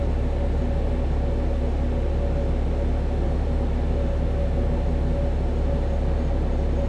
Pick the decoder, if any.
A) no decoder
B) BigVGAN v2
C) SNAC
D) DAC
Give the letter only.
A